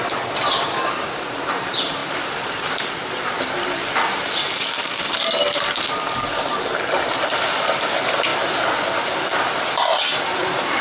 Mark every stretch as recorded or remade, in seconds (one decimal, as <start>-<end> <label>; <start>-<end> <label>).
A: 0.0-8.3 remade; 8.3-9.7 recorded; 9.7-10.8 remade